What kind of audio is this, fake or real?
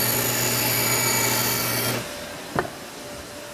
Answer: real